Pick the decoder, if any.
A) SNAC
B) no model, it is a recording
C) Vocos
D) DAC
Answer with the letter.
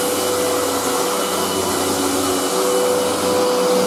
B